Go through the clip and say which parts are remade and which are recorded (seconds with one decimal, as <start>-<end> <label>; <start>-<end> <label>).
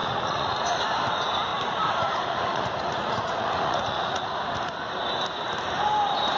0.0-0.8 remade; 0.8-1.5 recorded; 1.5-4.4 remade; 4.4-6.4 recorded